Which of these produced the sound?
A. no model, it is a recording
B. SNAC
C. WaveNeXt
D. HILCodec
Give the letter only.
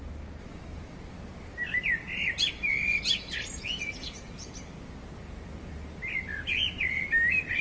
A